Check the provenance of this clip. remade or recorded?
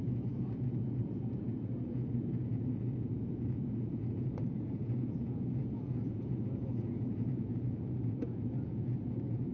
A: remade